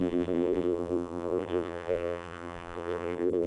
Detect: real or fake fake